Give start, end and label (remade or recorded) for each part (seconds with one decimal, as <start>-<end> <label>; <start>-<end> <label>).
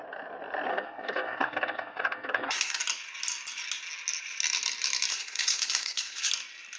0.0-0.7 recorded; 0.7-2.8 remade; 2.8-5.1 recorded; 5.1-6.3 remade; 6.3-6.8 recorded